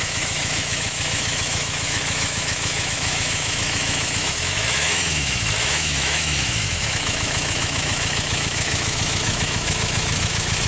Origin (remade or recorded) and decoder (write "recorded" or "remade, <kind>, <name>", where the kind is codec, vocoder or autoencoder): remade, autoencoder, DAC-VAE